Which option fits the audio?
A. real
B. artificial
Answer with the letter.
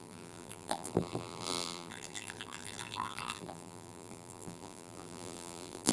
B